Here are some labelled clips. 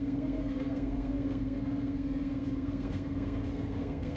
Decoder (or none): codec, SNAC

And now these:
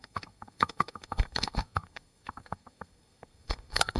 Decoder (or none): codec, SNAC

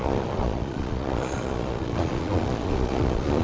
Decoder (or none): vocoder, Vocos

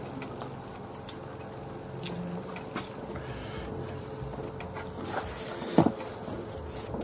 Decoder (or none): none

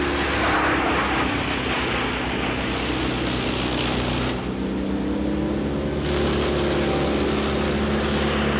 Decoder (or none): none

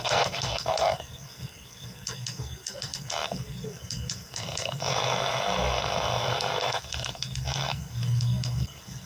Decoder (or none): codec, SNAC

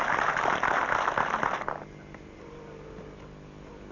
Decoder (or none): none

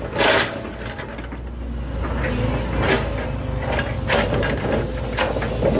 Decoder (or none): none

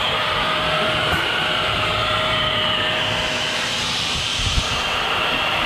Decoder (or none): vocoder, BigVGAN v2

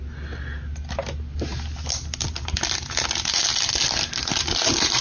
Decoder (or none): none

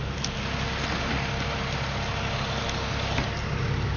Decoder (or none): none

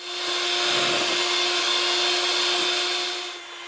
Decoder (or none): none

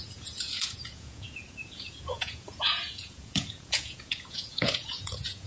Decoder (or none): vocoder, Vocos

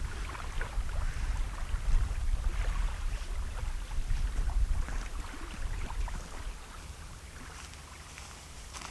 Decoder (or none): none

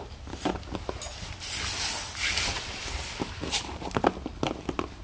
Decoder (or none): none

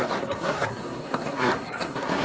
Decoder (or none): codec, SNAC